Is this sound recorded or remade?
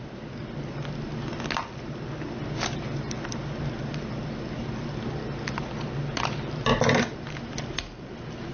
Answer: recorded